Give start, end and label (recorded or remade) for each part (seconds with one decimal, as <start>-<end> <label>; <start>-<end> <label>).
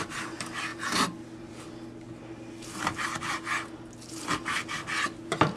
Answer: 0.0-5.6 recorded